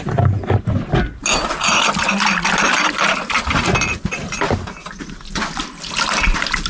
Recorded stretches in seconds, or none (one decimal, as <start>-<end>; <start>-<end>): 0.0-6.7